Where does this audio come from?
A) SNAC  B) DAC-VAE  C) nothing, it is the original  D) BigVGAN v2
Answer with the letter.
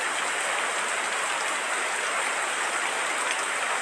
C